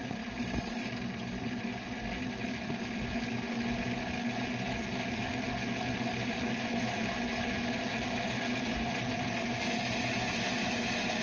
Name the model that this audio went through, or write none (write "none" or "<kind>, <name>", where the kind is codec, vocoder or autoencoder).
none